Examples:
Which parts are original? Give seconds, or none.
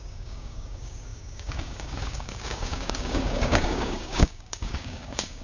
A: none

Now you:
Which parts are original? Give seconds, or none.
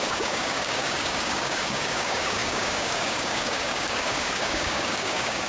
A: none